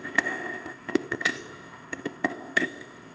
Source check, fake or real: fake